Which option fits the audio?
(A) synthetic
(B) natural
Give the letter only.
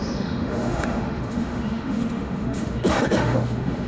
A